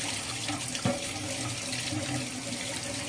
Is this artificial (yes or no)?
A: no